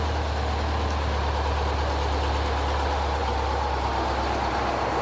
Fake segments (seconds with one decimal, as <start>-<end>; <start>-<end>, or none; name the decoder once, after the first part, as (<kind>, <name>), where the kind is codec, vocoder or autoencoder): none